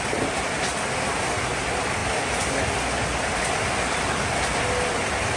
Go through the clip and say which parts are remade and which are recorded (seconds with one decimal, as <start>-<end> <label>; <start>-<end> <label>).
0.0-5.4 recorded